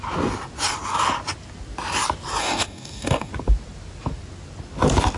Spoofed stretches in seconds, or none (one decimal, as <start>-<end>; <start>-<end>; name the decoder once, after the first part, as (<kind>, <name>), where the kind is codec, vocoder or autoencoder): 2.4-3.3 (codec, DAC)